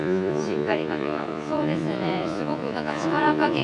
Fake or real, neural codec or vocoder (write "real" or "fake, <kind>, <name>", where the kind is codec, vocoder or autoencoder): fake, vocoder, Vocos